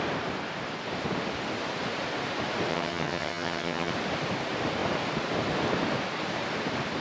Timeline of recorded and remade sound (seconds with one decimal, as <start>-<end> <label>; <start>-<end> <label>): 0.0-2.7 recorded; 2.7-3.9 remade; 3.9-7.0 recorded